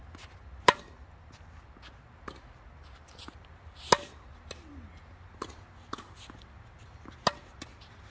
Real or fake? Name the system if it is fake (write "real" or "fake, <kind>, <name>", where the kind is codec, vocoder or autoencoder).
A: real